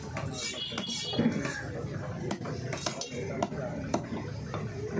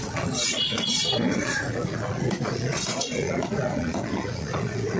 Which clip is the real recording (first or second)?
first